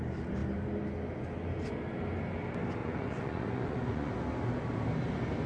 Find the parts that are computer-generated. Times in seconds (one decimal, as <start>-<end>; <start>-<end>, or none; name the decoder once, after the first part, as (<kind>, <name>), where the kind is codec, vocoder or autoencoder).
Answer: 2.8-4.1 (vocoder, Vocos)